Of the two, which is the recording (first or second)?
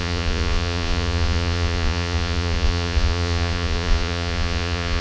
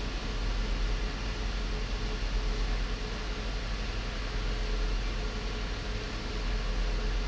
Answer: second